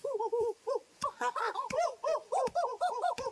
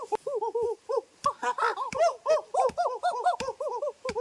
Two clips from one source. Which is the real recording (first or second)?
second